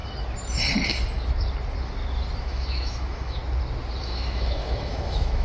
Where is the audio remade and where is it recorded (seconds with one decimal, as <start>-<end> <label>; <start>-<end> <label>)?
0.0-2.4 recorded; 2.4-3.4 remade; 3.4-4.0 recorded; 4.0-5.4 remade